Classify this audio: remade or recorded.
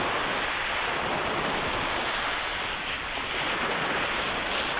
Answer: recorded